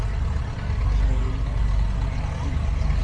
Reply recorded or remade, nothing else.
recorded